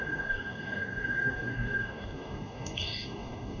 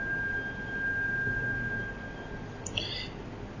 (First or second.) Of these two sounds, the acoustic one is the second